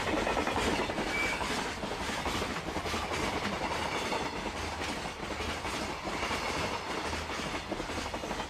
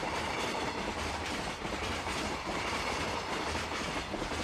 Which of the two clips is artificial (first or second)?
second